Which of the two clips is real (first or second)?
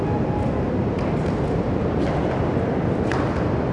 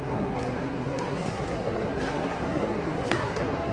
first